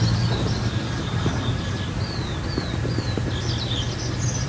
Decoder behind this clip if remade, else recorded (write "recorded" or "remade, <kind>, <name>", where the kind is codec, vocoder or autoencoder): recorded